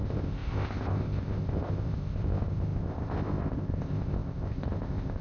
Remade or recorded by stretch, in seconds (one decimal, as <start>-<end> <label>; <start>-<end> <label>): 0.0-5.2 remade